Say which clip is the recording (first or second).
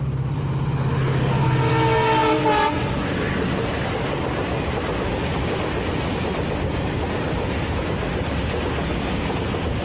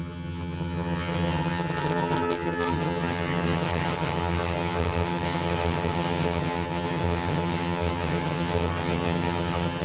first